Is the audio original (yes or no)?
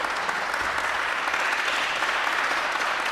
yes